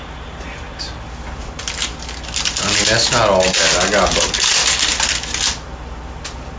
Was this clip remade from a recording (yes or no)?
no